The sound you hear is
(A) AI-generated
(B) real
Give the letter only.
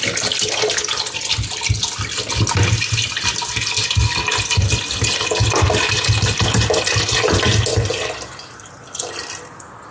B